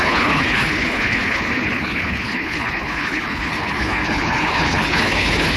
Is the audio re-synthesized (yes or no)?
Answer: yes